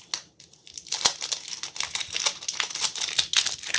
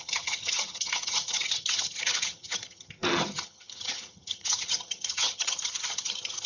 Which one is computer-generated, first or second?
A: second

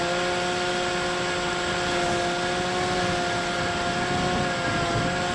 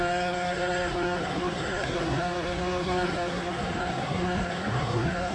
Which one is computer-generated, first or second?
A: second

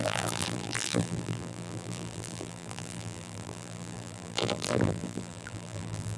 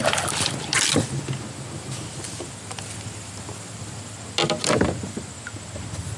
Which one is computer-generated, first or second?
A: first